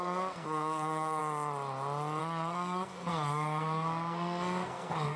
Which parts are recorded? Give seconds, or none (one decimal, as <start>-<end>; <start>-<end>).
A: 1.2-2.2